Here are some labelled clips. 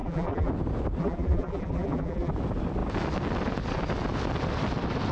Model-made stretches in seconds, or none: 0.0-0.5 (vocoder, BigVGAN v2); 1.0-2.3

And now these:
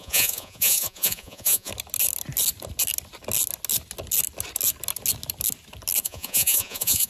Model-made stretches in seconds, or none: 0.0-1.7 (vocoder, Vocos); 6.0-7.1

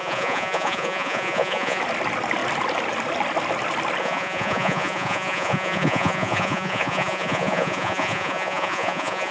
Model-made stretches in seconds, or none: 0.0-1.8 (vocoder, Vocos); 4.0-9.3

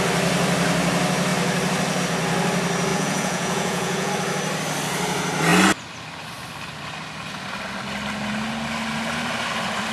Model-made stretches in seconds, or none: 2.9-4.1 (vocoder, Vocos)

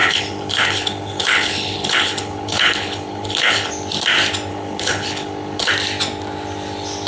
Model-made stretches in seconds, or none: 0.0-3.7 (codec, HILCodec); 4.5-5.7